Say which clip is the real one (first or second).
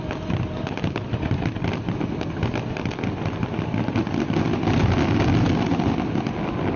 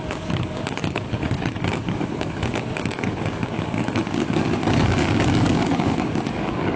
first